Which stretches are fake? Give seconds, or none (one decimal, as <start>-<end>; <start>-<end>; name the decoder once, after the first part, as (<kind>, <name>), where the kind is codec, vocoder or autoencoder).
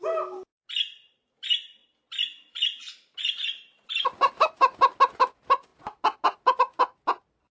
none